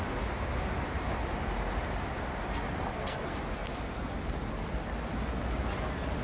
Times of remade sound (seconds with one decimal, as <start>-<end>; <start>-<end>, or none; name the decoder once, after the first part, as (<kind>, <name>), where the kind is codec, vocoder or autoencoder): 2.9-3.4 (codec, SNAC)